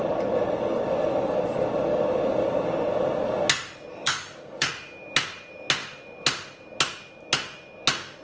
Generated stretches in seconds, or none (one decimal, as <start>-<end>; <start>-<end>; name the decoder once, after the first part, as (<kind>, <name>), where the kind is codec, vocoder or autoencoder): 3.9-4.7 (codec, DAC)